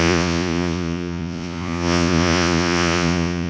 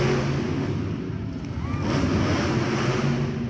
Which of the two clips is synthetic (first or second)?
first